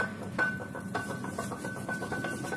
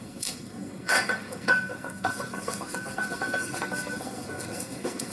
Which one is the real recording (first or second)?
first